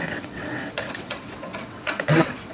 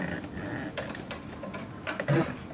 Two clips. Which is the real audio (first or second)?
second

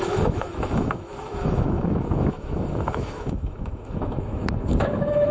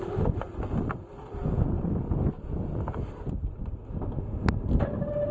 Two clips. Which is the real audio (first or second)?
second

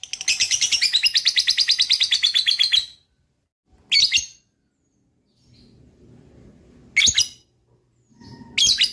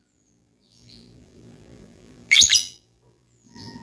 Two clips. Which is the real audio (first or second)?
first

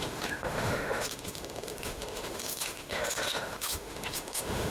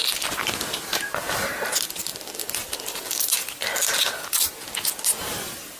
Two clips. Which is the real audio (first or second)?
second